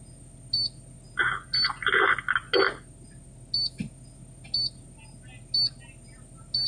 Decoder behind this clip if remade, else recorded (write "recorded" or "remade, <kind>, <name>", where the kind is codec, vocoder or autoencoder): recorded